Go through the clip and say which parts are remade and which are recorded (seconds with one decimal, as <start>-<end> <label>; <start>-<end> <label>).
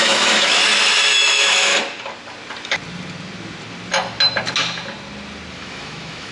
0.0-0.6 remade; 0.6-1.1 recorded; 1.1-1.7 remade; 1.7-5.5 recorded; 5.5-6.3 remade